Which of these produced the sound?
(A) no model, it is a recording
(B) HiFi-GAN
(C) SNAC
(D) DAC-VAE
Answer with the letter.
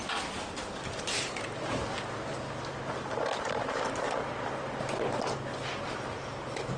A